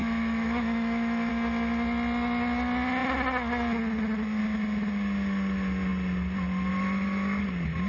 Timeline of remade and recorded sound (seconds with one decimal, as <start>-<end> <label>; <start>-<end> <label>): 0.0-1.3 remade; 1.3-7.9 recorded